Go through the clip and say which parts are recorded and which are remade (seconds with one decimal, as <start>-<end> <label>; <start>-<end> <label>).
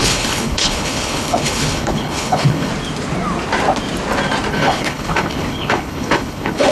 0.0-2.7 remade; 2.7-4.5 recorded; 4.5-6.7 remade